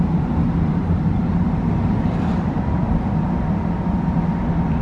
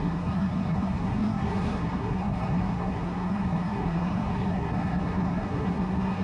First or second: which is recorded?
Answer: first